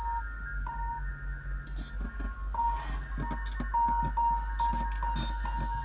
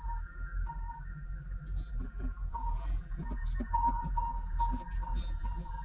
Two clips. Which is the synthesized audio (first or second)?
second